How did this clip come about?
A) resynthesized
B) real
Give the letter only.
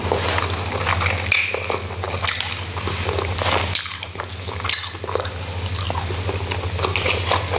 B